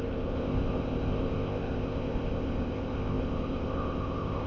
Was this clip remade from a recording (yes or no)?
yes